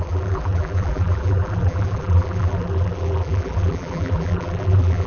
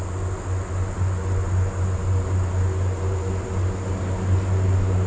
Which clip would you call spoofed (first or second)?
first